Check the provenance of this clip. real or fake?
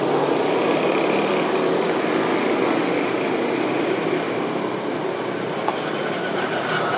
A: real